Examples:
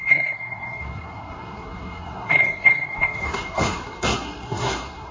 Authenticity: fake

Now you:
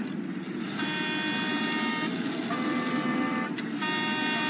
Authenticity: real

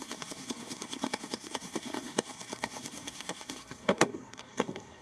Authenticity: fake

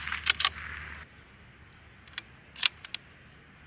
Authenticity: real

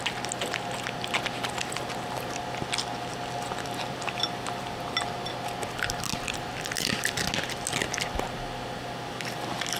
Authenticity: real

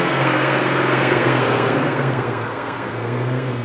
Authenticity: fake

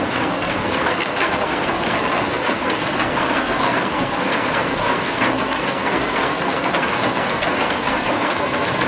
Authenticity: fake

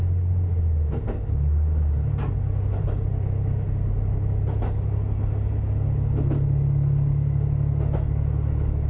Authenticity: real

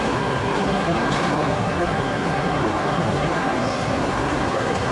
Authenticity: fake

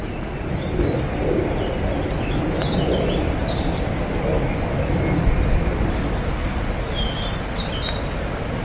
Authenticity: real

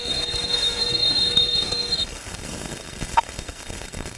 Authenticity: fake